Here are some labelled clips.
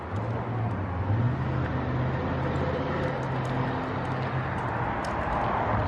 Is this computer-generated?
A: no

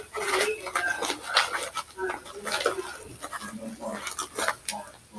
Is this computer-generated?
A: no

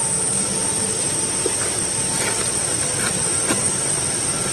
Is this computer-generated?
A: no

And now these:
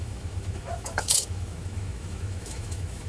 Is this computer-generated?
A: yes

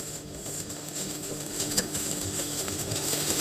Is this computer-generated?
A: yes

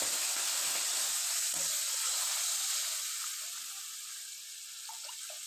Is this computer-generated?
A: no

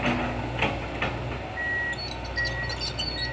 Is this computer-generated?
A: no